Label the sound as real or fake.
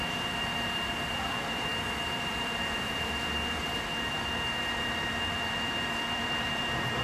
fake